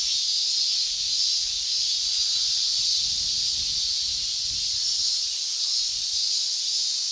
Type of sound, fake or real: real